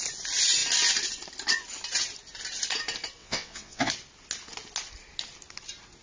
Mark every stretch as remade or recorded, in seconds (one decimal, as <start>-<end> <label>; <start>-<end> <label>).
0.0-3.2 recorded; 3.2-3.9 remade; 3.9-6.0 recorded